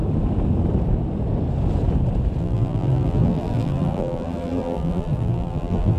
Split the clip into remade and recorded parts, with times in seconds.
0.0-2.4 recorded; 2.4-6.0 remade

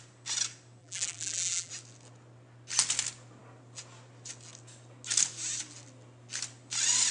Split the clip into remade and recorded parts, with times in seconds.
0.0-0.8 recorded; 0.8-1.7 remade; 1.7-7.1 recorded

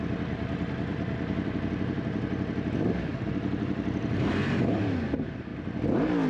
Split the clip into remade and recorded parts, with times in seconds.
0.0-0.9 recorded; 0.9-4.7 remade; 4.7-6.3 recorded

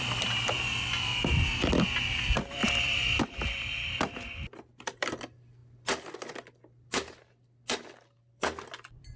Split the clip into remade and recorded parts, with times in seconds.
0.0-1.1 remade; 1.1-2.2 recorded; 2.2-5.6 remade; 5.6-8.2 recorded; 8.2-9.2 remade

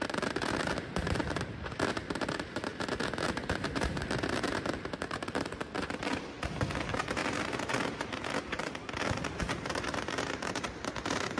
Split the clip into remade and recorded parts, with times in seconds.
0.0-11.4 recorded

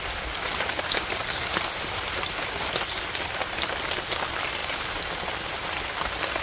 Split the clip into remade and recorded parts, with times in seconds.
0.0-0.5 remade; 0.5-1.8 recorded; 1.8-4.6 remade; 4.6-5.2 recorded; 5.2-6.4 remade

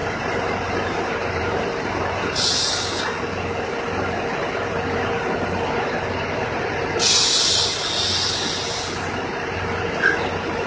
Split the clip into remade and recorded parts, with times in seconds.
0.0-2.7 remade; 2.7-10.7 recorded

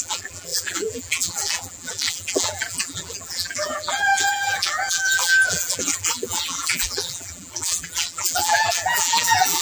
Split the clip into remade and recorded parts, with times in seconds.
0.0-9.6 remade